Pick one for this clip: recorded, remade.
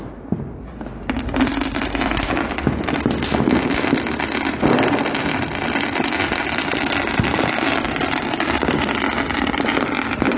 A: recorded